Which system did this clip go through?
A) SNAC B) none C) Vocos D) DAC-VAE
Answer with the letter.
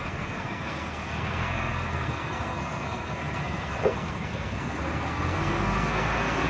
A